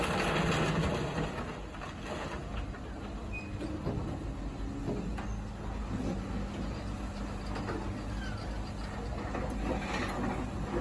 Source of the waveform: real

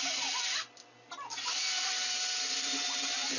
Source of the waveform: real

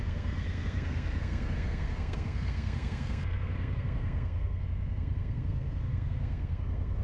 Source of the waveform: fake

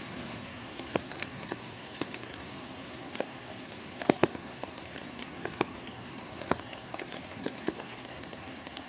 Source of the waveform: fake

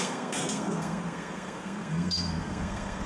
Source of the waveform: fake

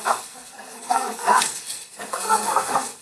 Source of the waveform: fake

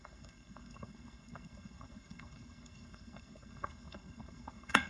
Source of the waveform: fake